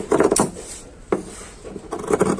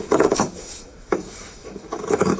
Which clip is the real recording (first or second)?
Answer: first